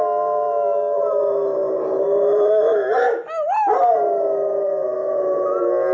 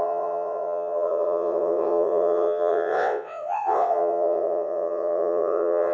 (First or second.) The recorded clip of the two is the first